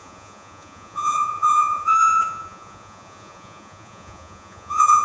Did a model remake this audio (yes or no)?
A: yes